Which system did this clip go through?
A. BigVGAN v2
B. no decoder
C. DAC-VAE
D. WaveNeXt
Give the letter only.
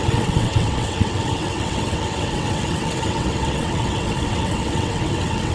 D